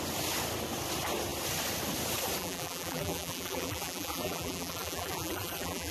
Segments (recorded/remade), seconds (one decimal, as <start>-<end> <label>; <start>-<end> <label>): 0.0-2.4 recorded; 2.4-5.9 remade